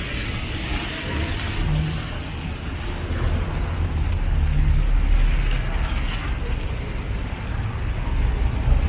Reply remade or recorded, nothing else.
recorded